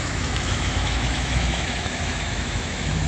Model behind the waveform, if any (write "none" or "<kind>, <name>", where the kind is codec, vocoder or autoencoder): autoencoder, DAC-VAE